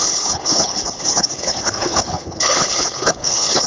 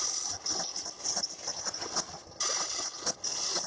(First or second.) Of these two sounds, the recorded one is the second